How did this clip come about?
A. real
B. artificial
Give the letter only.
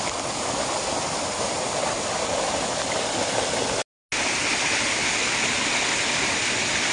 A